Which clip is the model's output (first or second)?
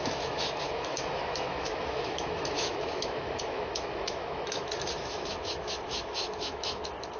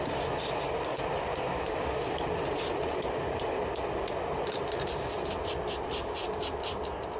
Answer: first